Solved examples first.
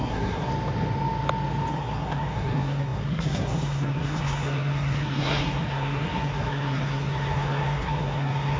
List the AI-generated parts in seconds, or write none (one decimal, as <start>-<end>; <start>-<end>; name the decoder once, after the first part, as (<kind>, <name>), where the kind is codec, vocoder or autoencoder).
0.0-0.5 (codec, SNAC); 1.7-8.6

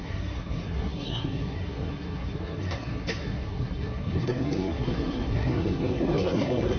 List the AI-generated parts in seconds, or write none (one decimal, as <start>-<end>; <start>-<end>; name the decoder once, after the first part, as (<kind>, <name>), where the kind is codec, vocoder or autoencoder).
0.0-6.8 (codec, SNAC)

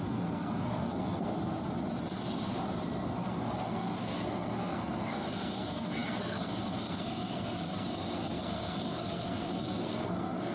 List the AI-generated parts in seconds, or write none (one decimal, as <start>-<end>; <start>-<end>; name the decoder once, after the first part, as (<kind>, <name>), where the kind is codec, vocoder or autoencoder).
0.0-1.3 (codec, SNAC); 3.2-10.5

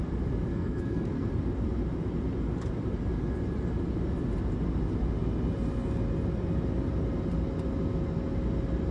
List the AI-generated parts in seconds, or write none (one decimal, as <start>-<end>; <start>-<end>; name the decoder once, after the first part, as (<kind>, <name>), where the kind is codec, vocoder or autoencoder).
0.5-1.3 (codec, SNAC)

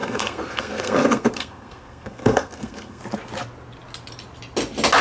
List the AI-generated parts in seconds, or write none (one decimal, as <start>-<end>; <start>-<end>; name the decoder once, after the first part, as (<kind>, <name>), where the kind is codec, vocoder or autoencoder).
0.0-3.0 (codec, SNAC)

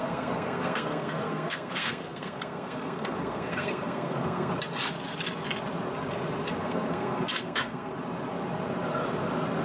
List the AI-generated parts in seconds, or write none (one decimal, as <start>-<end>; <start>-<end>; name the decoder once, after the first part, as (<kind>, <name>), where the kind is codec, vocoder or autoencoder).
0.0-4.5 (codec, SNAC); 6.6-7.9